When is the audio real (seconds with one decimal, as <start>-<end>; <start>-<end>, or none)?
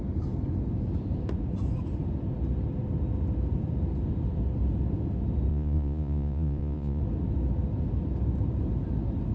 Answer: 0.0-5.5; 7.0-9.3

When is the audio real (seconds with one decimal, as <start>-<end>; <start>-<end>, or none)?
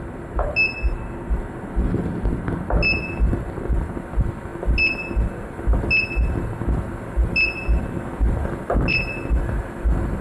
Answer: 0.0-10.2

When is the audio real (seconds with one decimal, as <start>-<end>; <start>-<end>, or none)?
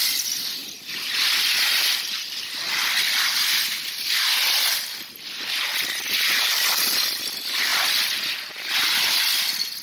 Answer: 0.0-7.7; 8.2-9.8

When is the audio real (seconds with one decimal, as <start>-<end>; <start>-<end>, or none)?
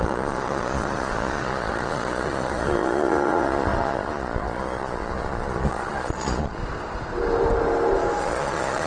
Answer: 6.6-8.2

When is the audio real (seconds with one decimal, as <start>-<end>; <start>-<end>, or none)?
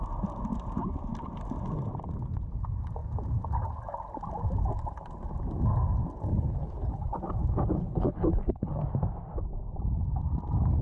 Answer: 0.0-6.3; 7.2-7.7; 8.8-10.8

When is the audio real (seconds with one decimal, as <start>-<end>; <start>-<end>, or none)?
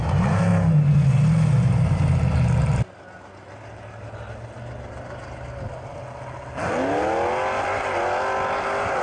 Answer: 0.0-9.0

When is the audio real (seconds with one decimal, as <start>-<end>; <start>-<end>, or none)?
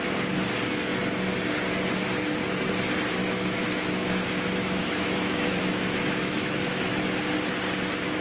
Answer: 0.0-3.2; 6.9-8.2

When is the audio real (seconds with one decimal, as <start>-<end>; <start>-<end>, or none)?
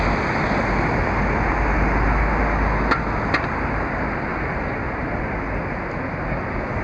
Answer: 0.0-6.8